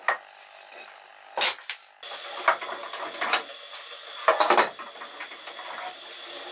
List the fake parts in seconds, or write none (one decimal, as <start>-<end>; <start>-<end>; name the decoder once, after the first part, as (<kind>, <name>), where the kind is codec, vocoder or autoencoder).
none